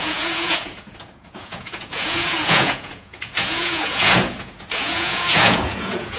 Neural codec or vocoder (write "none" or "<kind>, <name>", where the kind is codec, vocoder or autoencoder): vocoder, Vocos